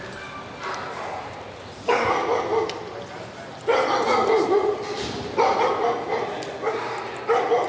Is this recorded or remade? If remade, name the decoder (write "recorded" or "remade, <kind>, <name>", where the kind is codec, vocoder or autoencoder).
recorded